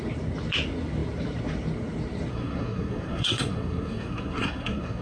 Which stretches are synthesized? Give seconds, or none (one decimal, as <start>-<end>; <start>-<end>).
2.3-5.0